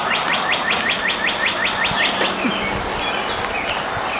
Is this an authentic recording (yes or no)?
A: yes